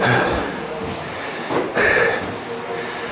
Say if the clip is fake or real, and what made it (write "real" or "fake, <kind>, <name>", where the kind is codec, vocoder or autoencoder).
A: real